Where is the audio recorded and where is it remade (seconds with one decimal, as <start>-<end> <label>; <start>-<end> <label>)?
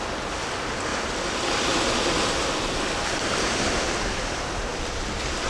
0.0-0.9 recorded; 0.9-4.2 remade; 4.2-4.7 recorded; 4.7-5.5 remade